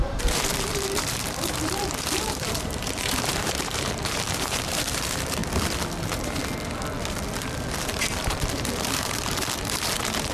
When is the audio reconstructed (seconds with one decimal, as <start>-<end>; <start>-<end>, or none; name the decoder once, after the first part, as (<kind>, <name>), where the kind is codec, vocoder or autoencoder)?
0.0-5.4 (vocoder, BigVGAN v2); 6.0-6.4; 7.7-10.3